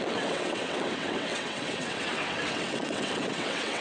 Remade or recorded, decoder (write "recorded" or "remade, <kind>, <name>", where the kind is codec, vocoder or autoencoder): remade, vocoder, WaveNeXt